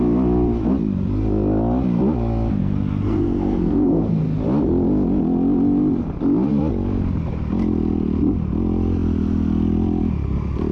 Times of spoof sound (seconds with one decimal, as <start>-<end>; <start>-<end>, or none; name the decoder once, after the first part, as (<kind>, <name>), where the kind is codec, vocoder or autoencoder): 2.6-4.2 (codec, SNAC)